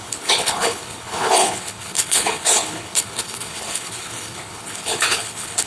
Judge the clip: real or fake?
fake